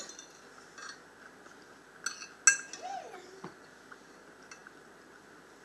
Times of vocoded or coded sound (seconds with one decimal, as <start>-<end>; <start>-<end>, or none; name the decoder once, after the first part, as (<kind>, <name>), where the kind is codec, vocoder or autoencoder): none